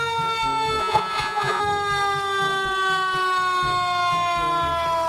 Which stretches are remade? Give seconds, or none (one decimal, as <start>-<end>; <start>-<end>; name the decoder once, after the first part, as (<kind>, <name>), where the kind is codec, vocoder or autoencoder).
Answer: 0.8-1.6 (vocoder, Vocos)